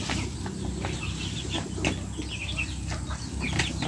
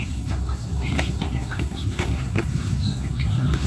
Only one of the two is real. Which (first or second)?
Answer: first